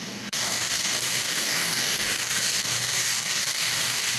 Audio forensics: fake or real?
fake